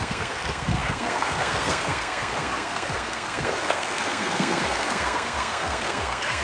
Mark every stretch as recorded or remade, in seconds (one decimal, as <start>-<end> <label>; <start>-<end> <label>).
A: 0.0-6.4 remade